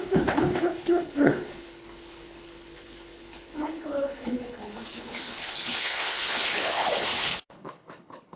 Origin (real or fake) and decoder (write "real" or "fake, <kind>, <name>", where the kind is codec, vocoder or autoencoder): fake, codec, HILCodec